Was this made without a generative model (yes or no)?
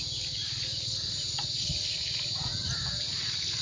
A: yes